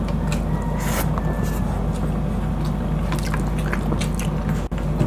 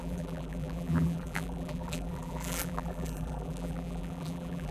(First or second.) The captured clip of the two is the first